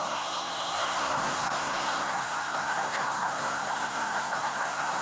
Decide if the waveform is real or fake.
fake